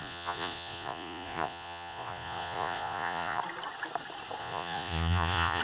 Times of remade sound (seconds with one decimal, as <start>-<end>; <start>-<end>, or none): 0.0-3.4; 4.4-5.6